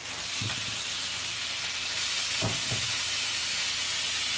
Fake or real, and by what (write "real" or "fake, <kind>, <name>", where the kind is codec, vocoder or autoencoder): real